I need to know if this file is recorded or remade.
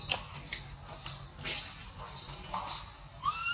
recorded